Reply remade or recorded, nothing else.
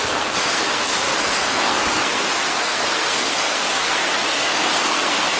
remade